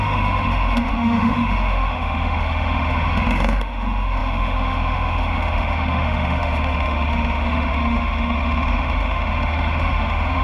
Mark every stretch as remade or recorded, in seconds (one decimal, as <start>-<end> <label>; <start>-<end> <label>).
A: 0.0-10.4 remade